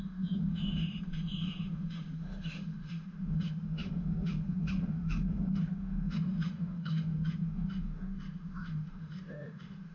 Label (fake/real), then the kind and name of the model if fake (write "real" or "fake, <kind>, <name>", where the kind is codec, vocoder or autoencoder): fake, autoencoder, DAC-VAE